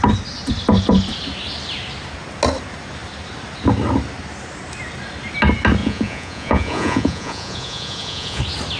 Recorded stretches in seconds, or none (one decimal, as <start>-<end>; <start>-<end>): 0.0-5.8; 8.4-8.8